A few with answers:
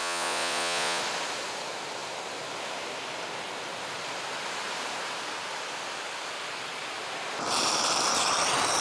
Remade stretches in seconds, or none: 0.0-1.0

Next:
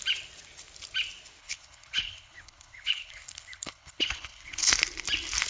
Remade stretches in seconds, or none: 1.4-4.7

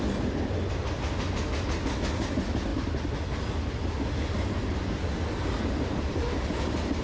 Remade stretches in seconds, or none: none